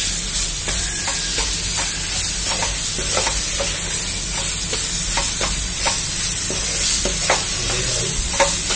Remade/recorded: recorded